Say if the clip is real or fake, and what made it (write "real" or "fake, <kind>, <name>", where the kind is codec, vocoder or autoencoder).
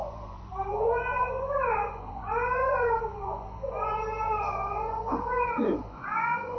fake, vocoder, Vocos